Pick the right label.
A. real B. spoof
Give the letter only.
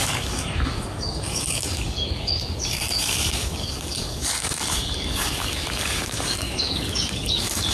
B